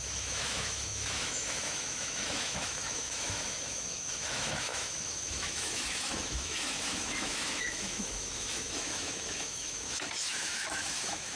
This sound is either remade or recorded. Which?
remade